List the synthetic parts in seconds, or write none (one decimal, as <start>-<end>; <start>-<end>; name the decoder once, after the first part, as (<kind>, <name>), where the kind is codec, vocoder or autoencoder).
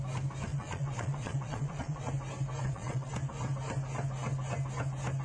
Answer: 0.5-2.1 (vocoder, Vocos); 2.6-3.1